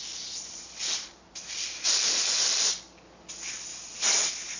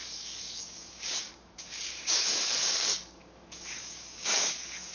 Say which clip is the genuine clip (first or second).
first